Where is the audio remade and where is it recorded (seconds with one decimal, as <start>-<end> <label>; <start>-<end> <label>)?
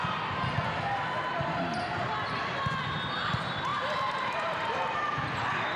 0.0-3.7 recorded; 3.7-5.0 remade; 5.0-5.8 recorded